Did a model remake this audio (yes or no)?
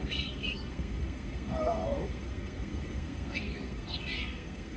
yes